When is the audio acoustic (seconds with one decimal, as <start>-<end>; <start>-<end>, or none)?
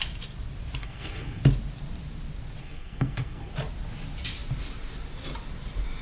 0.0-0.8; 1.4-2.6; 3.5-6.0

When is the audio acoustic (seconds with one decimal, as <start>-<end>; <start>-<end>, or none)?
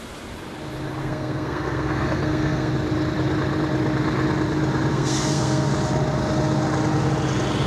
0.0-1.0; 2.7-4.9; 5.7-7.7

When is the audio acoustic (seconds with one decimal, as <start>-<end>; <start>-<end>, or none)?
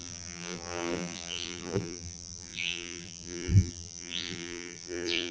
none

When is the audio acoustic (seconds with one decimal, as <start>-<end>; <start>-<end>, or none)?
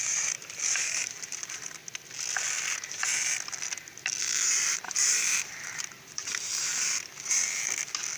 1.8-4.6; 6.7-8.2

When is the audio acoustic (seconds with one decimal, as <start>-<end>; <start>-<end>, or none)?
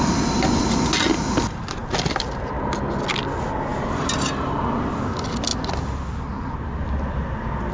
0.0-1.8; 2.4-3.7; 4.3-7.7